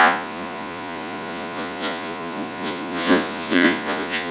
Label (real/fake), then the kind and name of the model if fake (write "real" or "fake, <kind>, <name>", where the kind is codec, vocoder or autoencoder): fake, vocoder, Vocos